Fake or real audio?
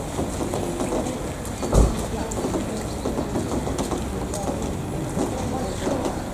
real